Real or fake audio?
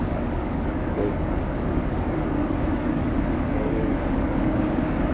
fake